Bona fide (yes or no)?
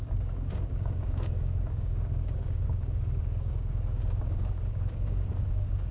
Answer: no